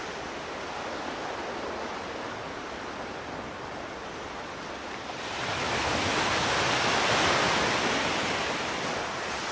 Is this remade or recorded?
recorded